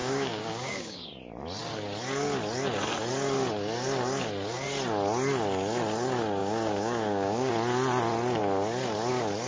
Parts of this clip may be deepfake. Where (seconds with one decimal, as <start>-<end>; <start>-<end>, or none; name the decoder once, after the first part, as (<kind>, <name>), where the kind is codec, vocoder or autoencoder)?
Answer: 0.0-1.1 (codec, DAC); 6.4-7.5